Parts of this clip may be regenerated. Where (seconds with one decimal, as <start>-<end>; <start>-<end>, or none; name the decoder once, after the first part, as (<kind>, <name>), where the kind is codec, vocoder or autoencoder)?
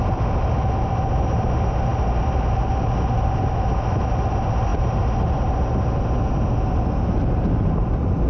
none